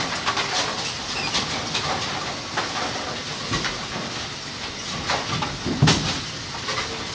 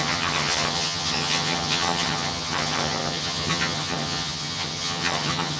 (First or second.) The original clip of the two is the first